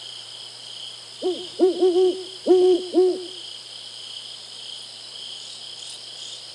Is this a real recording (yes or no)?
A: no